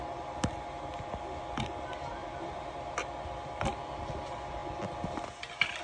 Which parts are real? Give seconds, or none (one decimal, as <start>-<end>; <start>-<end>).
0.0-5.8